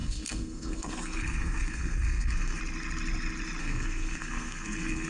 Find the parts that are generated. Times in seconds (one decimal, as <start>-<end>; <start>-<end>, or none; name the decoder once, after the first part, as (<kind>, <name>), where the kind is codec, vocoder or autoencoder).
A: 0.0-2.6 (codec, SNAC); 3.6-5.1